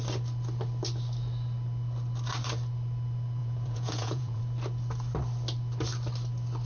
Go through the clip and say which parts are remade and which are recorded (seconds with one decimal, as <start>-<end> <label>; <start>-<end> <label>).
0.0-3.4 recorded; 3.4-4.4 remade; 4.4-6.7 recorded